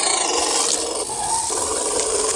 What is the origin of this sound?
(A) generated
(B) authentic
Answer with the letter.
B